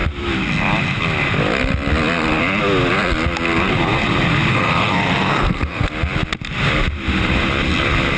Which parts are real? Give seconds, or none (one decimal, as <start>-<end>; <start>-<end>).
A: 0.0-4.5; 5.9-8.2